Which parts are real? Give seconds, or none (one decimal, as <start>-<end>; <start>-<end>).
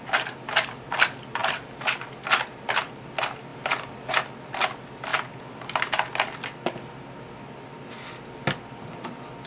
0.0-9.5